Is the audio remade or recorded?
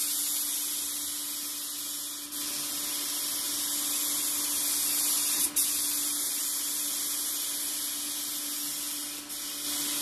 recorded